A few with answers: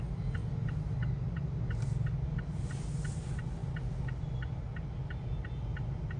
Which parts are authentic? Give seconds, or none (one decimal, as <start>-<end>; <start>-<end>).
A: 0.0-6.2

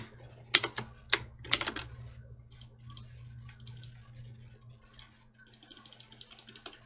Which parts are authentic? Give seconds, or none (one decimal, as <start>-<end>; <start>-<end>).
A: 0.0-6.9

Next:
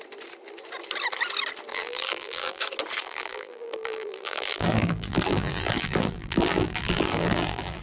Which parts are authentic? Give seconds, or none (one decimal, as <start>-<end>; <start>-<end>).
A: 0.0-1.7; 2.6-3.0

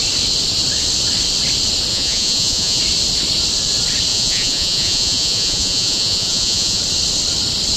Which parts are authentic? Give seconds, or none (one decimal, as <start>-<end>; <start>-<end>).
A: 0.0-1.9; 2.8-4.1; 6.8-7.8

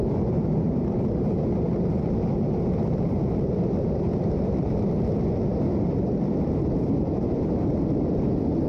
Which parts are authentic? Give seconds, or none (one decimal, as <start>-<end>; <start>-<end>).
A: 0.0-8.7

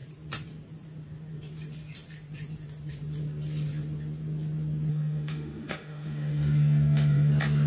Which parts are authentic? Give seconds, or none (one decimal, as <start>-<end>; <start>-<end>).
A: 0.0-4.9; 7.3-7.7